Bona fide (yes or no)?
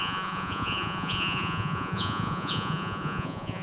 no